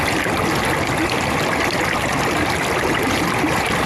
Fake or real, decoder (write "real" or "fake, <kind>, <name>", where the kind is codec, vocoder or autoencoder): real